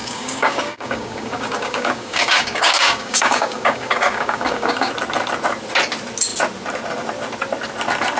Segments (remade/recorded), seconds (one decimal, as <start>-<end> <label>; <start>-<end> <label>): 0.0-4.9 remade; 4.9-8.2 recorded